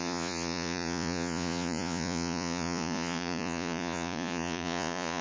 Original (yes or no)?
no